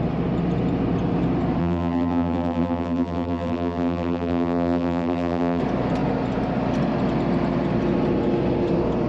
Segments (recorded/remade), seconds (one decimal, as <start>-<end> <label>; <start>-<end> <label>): 0.0-1.6 recorded; 1.6-5.6 remade; 5.6-9.1 recorded

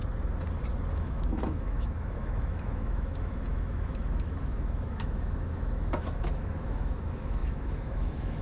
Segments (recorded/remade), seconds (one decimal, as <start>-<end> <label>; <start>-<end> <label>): 0.0-0.9 recorded; 0.9-8.4 remade